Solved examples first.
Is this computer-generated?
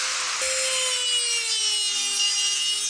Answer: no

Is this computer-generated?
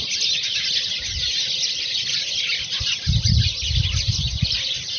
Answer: no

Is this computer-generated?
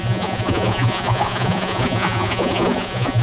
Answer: yes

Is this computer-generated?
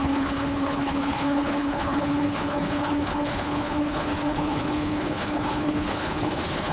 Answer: yes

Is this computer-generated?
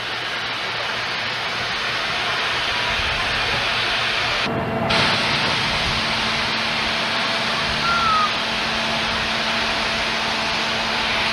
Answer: no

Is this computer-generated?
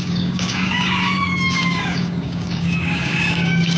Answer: yes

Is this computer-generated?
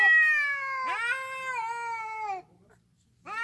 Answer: no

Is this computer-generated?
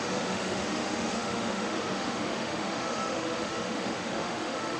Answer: yes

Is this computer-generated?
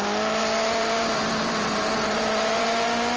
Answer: yes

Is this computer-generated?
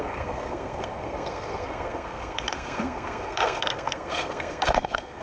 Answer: yes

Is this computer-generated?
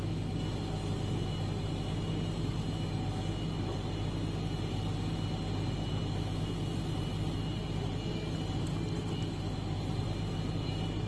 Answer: no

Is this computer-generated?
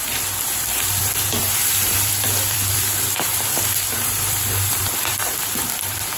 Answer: yes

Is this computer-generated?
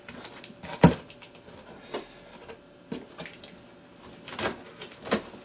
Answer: no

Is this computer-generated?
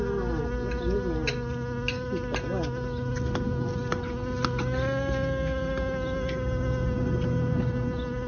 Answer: no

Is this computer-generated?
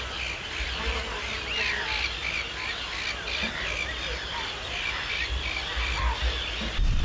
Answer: no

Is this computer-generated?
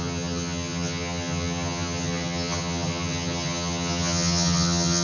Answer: yes